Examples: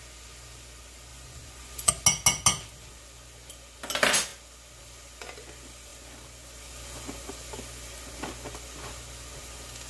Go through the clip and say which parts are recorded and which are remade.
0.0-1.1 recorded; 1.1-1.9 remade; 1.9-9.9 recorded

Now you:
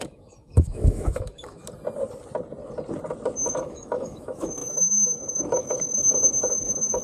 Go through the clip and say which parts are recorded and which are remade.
0.0-1.6 remade; 1.6-3.5 recorded; 3.5-6.0 remade; 6.0-6.5 recorded; 6.5-7.0 remade